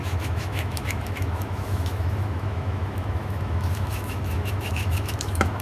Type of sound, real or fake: fake